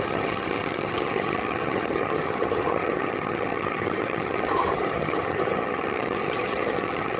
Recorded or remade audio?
remade